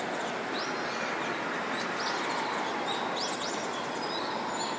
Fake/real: real